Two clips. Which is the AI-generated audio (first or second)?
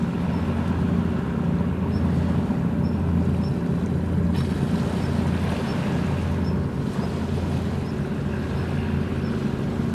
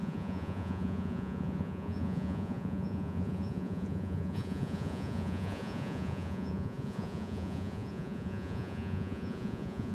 second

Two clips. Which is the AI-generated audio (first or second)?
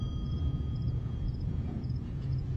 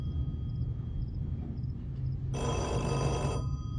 first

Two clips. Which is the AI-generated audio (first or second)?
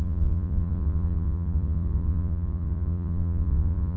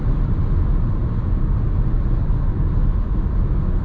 first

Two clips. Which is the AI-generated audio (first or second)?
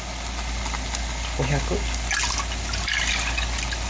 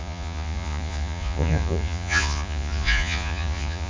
second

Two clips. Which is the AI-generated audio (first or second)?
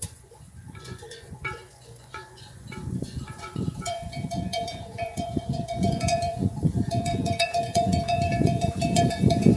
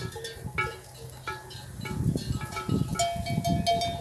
first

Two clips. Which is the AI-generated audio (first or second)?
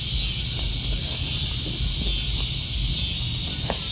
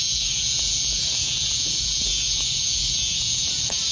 second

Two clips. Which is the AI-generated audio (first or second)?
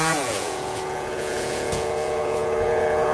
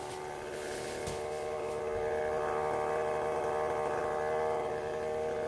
first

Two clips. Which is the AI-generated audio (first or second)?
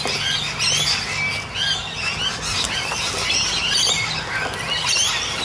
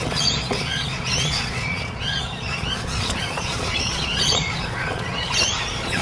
second